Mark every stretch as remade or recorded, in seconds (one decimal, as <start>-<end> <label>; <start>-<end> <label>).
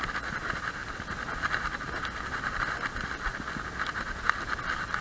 0.0-5.0 recorded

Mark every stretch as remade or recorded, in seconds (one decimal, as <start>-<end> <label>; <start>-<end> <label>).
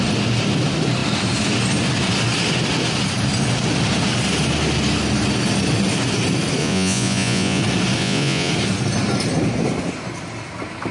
0.0-6.6 recorded; 6.6-7.6 remade; 7.6-8.0 recorded; 8.0-8.5 remade; 8.5-10.9 recorded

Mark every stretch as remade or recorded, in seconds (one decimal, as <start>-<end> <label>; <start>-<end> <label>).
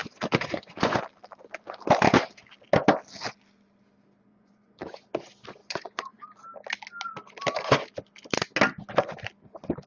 0.0-1.0 remade; 1.0-4.3 recorded; 4.3-5.0 remade; 5.0-5.6 recorded; 5.6-6.2 remade; 6.2-9.9 recorded